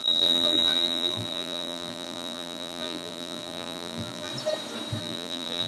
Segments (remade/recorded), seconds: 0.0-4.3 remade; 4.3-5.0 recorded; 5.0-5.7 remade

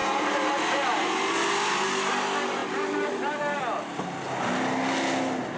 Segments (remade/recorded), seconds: 0.0-2.6 recorded; 2.6-3.6 remade; 3.6-5.6 recorded